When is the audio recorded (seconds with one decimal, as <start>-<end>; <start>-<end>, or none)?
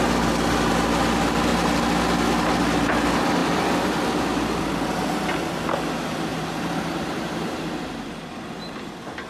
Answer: 0.0-6.3; 8.8-9.3